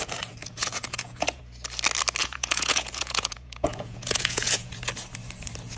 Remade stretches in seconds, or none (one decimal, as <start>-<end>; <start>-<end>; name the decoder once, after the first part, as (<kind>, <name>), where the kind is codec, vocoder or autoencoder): 0.4-1.4 (vocoder, Vocos); 2.2-4.7